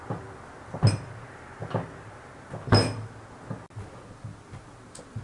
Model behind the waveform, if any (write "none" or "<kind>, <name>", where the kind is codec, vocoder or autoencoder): none